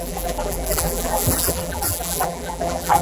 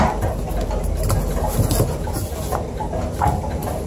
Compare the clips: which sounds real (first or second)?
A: second